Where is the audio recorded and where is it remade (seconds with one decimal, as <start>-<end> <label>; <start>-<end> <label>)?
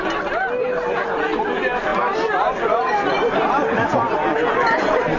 0.0-5.2 recorded